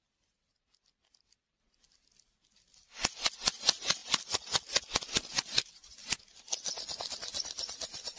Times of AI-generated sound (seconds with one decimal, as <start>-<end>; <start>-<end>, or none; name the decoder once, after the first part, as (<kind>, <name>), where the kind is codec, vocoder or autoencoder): none